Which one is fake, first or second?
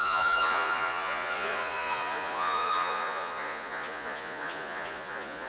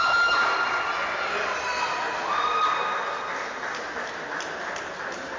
first